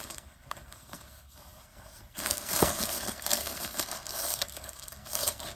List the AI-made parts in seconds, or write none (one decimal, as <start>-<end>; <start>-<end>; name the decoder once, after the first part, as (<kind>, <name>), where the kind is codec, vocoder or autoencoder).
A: 0.0-5.6 (codec, SNAC)